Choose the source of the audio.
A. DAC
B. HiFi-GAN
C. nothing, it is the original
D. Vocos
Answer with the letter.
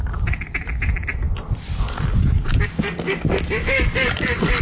C